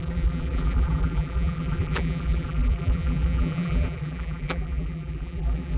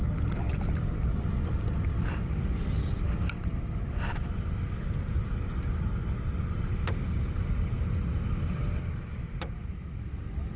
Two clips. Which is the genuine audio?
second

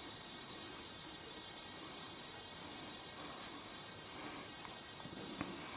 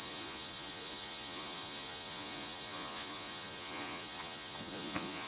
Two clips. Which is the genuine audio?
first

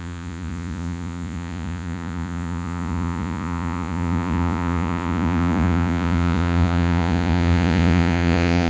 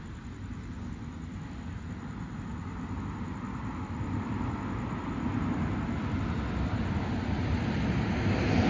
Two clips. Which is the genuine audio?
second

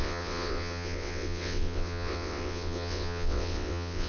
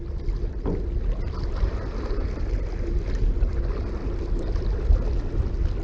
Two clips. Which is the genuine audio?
second